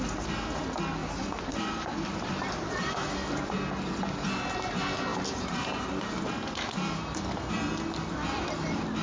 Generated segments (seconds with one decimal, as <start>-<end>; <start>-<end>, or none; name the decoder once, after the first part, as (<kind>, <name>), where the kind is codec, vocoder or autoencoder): 1.0-2.9 (vocoder, BigVGAN v2); 5.1-7.4